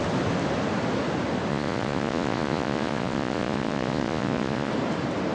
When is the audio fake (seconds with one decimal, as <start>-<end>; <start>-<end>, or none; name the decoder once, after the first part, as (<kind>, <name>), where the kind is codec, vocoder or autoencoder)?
1.5-4.7 (vocoder, Vocos)